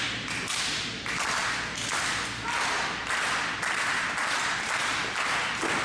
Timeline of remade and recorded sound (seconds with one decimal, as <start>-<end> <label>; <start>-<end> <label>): 0.0-5.8 recorded